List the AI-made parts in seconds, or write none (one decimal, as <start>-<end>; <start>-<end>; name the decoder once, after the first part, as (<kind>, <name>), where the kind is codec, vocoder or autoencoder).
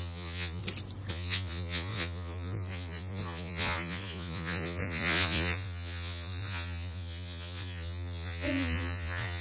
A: 0.0-0.6 (vocoder, Vocos); 1.1-9.4